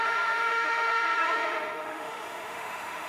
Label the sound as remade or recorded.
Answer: remade